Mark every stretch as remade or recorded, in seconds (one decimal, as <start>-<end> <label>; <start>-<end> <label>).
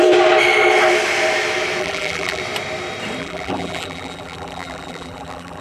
0.0-1.8 recorded; 1.8-2.4 remade; 2.4-3.2 recorded; 3.2-5.6 remade